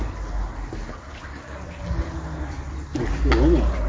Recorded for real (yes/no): yes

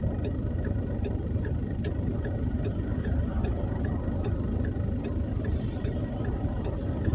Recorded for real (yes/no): no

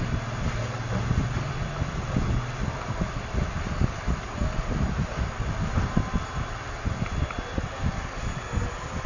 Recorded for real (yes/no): yes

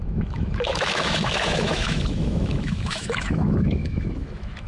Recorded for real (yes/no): no